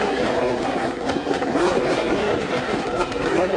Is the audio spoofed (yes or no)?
yes